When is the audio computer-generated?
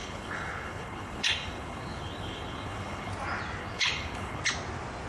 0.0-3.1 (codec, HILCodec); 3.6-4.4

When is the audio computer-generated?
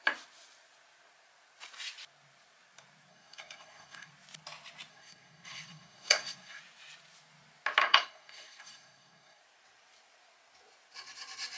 3.1-4.1 (codec, SNAC); 4.9-6.6; 7.8-9.4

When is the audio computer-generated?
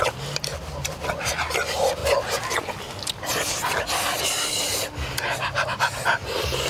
none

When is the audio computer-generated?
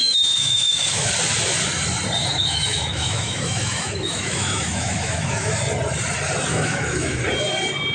0.0-1.1 (autoencoder, DAC-VAE); 2.2-5.5; 6.5-7.2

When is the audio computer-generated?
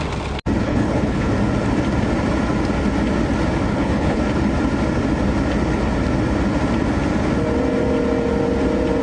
0.6-1.3 (codec, HILCodec); 3.7-4.2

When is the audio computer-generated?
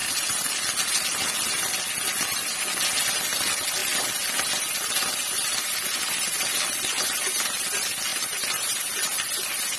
0.0-0.5 (vocoder, BigVGAN v2); 8.1-8.8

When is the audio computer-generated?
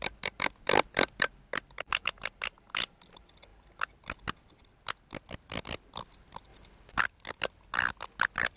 0.0-3.5 (vocoder, BigVGAN v2); 5.6-6.5; 7.0-8.6